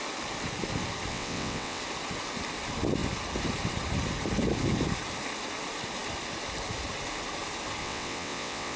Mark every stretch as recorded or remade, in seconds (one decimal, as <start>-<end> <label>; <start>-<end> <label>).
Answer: 0.0-1.1 recorded; 1.1-1.8 remade; 1.8-7.8 recorded; 7.8-8.8 remade